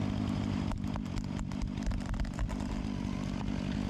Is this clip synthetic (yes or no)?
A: yes